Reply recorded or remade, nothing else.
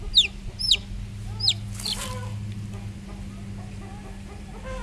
recorded